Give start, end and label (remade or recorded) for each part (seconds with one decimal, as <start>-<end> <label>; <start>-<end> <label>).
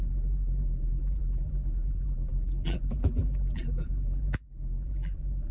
0.0-5.5 remade